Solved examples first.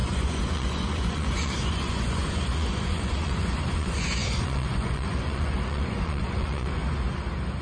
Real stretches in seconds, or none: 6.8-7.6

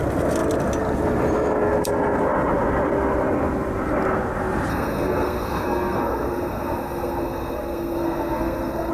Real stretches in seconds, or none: 0.0-4.7